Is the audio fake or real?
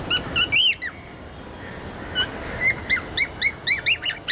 real